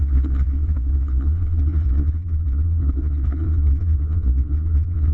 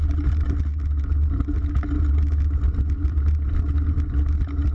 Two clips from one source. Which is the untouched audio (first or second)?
second